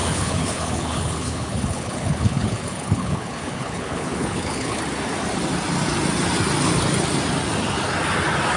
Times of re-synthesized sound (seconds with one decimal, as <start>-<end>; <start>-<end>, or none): 0.0-4.8